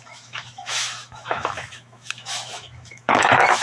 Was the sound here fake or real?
fake